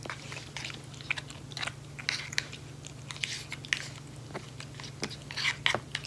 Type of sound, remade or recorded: recorded